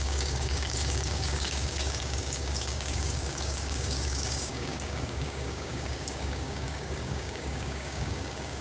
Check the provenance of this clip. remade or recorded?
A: remade